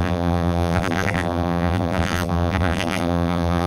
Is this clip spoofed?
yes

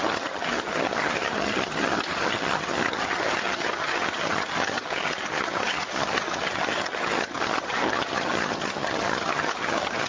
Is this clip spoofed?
yes